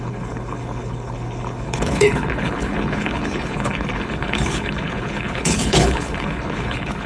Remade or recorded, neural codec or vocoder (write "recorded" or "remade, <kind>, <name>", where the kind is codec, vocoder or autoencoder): remade, codec, HILCodec